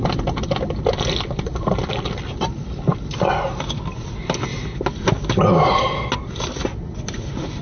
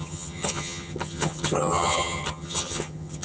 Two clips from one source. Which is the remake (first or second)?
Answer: second